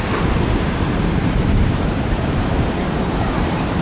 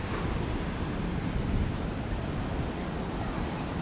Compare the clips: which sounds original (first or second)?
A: second